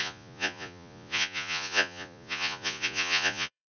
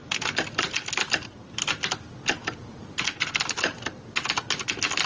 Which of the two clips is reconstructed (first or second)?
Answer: first